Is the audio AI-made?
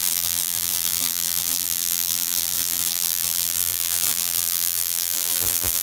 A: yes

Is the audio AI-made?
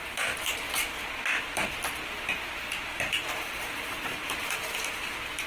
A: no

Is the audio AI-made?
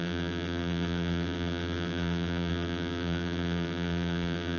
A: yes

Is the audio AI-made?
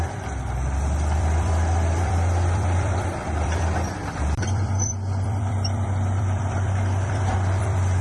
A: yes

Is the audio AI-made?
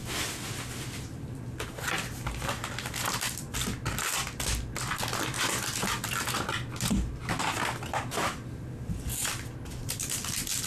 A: no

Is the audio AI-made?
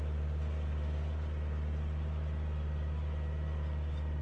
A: no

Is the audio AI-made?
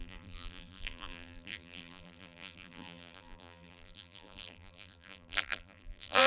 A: yes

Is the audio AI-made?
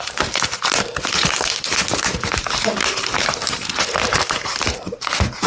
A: yes